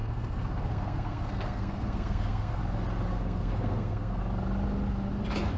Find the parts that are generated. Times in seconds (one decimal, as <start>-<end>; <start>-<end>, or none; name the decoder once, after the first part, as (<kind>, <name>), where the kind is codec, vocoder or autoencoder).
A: 0.0-2.6 (codec, SNAC); 3.1-4.2